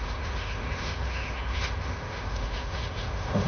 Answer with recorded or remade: remade